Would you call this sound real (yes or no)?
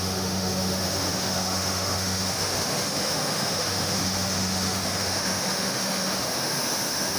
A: no